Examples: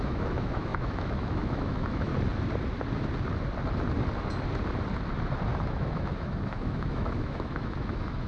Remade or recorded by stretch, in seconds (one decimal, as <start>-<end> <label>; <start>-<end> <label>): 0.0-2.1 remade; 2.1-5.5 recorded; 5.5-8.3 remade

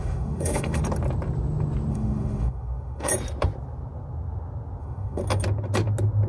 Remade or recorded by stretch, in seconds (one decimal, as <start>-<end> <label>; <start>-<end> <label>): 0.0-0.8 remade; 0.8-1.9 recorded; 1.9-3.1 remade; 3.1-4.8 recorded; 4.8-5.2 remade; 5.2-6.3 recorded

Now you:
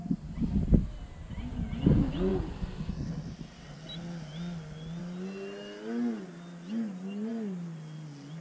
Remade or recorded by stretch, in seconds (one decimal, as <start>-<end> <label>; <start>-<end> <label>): 0.0-8.4 recorded

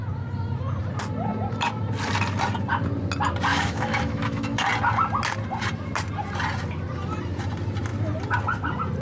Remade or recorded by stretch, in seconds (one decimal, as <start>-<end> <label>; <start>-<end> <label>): 0.0-3.5 recorded; 3.5-4.7 remade; 4.7-9.0 recorded

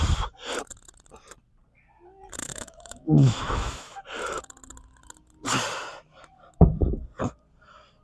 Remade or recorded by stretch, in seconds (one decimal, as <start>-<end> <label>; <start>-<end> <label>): 0.0-2.4 recorded; 2.4-4.0 remade; 4.0-8.0 recorded

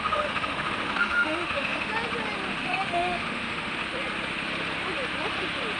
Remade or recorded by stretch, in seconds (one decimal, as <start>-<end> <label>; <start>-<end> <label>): 0.0-1.9 remade; 1.9-2.5 recorded; 2.5-3.8 remade; 3.8-5.8 recorded